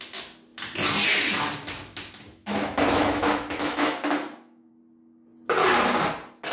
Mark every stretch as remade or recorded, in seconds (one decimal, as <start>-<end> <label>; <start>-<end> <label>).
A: 0.0-2.4 recorded; 2.4-4.7 remade; 4.7-6.5 recorded